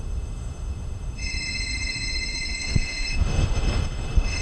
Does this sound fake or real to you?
fake